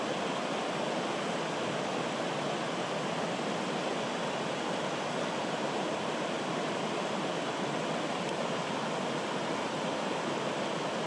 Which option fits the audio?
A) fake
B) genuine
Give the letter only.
B